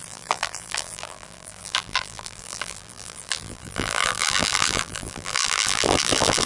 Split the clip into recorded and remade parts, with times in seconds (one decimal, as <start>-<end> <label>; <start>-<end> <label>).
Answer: 0.0-6.5 remade